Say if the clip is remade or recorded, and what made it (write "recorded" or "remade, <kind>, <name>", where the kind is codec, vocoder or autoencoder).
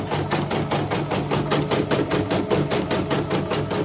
recorded